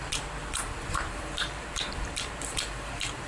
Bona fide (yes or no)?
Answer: no